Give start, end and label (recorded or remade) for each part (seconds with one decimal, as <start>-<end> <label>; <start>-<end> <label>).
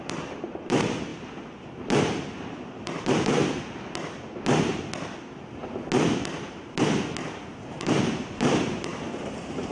0.0-1.1 remade; 1.1-2.0 recorded; 2.0-3.4 remade; 3.4-7.6 recorded; 7.6-9.7 remade